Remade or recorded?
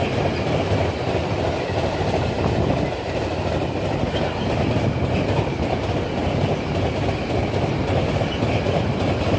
recorded